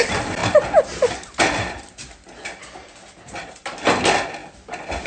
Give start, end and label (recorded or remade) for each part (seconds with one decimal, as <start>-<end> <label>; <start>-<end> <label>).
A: 0.0-5.1 recorded